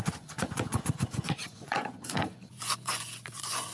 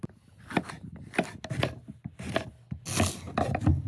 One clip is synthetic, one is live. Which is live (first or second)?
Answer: second